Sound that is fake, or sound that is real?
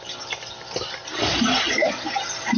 fake